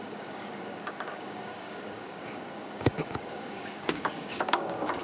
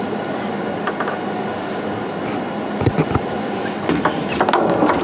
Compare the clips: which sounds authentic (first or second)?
second